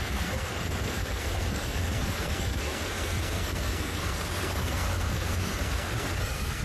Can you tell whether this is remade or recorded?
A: remade